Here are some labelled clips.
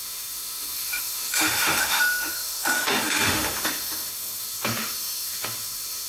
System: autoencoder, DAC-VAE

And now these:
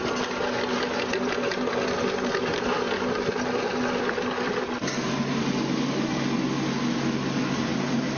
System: none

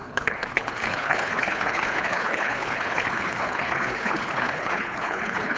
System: codec, HILCodec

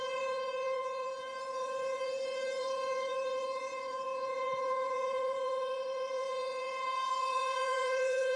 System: vocoder, Vocos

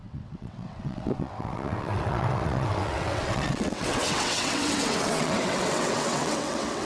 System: vocoder, WaveNeXt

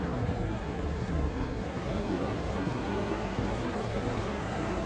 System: codec, SNAC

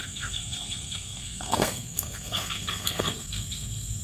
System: codec, SNAC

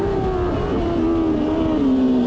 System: none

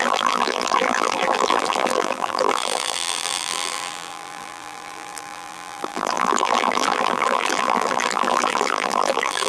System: vocoder, BigVGAN v2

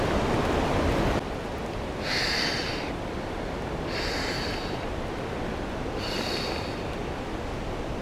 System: none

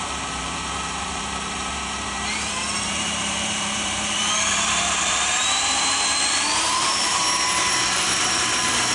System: vocoder, BigVGAN v2